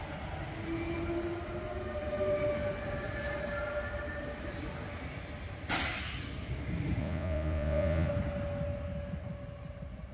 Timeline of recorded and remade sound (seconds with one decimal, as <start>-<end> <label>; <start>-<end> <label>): 0.0-7.0 recorded; 7.0-8.1 remade; 8.1-10.1 recorded